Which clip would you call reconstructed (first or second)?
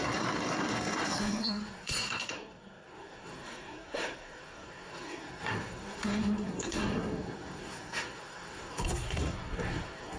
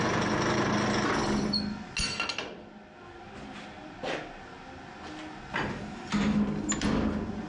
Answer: first